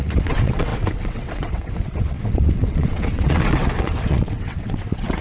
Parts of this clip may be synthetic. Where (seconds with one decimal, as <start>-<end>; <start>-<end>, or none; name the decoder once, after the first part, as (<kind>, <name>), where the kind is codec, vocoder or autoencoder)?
0.0-5.2 (vocoder, WaveNeXt)